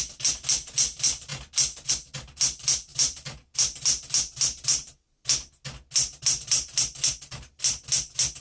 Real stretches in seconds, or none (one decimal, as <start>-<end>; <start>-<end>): 0.0-8.4